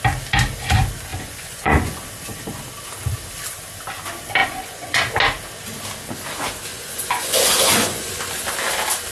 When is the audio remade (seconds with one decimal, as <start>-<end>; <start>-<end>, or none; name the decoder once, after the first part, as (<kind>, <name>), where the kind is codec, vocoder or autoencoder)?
1.1-2.0 (vocoder, Vocos); 4.4-5.0; 6.7-8.2